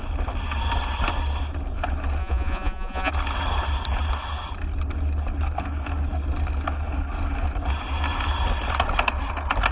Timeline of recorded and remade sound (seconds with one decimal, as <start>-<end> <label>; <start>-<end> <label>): 0.0-2.2 recorded; 2.2-3.1 remade; 3.1-9.7 recorded